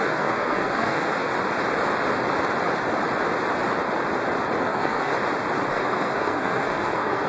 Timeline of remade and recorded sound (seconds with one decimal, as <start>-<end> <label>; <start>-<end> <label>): 0.0-1.3 remade; 1.3-4.6 recorded; 4.6-5.1 remade; 5.1-5.7 recorded; 5.7-7.3 remade